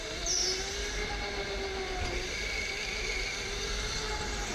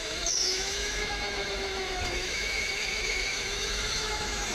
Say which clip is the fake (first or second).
second